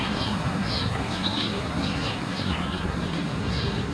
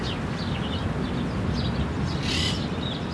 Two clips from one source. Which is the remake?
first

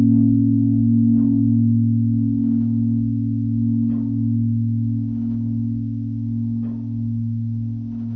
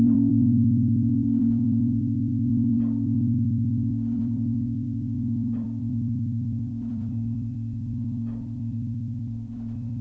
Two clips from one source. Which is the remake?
second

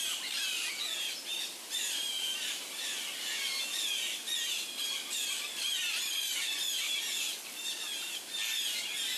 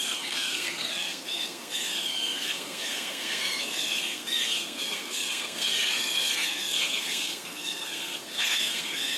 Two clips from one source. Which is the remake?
second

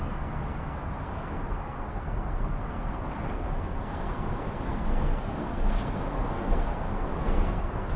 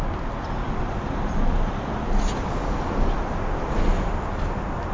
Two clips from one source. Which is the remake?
first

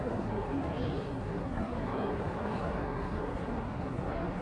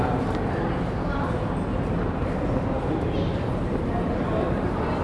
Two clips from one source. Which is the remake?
first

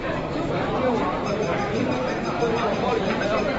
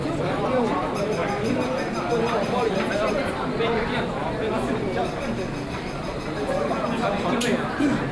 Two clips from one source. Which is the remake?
first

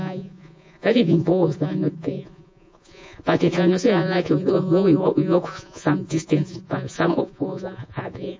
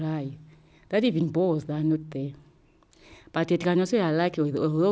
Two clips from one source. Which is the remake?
first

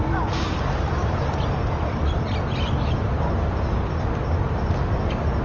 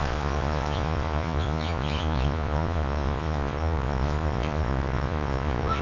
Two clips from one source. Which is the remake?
second